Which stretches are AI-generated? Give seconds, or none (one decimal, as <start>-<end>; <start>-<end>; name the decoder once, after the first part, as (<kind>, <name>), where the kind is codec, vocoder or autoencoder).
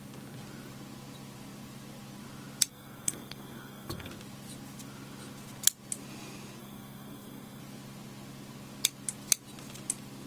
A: 2.7-4.1 (codec, SNAC); 6.6-7.6